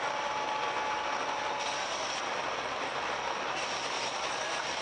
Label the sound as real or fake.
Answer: real